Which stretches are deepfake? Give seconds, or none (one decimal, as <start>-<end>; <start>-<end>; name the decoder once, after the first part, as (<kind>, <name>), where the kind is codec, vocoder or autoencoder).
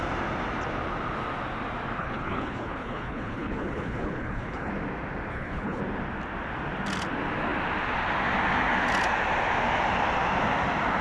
2.0-4.7 (codec, HILCodec); 5.3-5.8